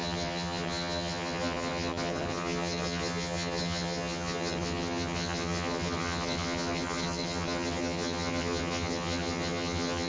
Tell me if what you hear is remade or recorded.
remade